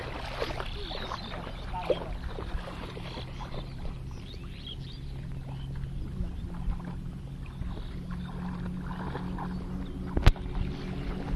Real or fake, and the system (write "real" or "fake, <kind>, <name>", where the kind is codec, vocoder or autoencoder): real